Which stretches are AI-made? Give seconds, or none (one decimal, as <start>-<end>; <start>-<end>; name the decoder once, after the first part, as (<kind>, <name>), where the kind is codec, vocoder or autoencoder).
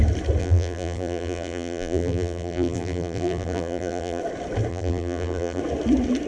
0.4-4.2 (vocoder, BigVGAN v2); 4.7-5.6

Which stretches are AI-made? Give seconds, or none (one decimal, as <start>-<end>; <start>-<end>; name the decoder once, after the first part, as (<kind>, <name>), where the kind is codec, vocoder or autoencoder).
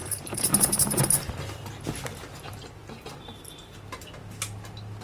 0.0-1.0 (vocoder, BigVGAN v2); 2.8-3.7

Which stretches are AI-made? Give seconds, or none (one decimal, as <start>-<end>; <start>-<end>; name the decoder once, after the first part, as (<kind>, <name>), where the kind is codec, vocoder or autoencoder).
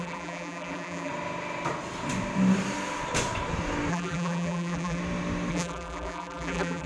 0.0-1.1 (vocoder, BigVGAN v2); 3.9-5.0; 5.5-6.9